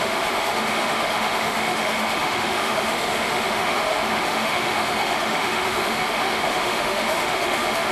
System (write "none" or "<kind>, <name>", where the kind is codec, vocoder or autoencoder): autoencoder, DAC-VAE